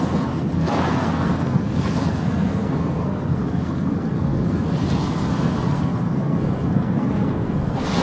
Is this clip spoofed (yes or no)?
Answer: yes